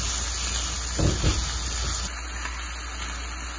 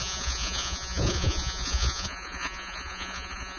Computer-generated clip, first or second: second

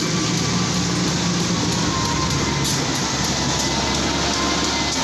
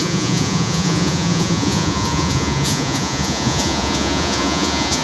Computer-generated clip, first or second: second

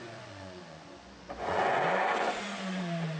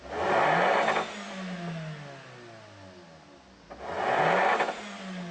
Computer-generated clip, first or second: first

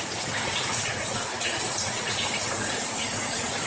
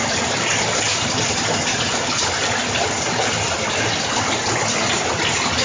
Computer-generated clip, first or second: first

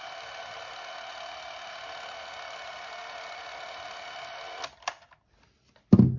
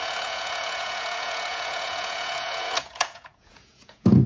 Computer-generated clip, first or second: second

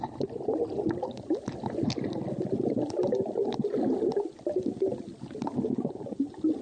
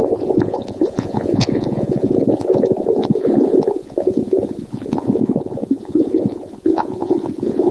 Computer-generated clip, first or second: second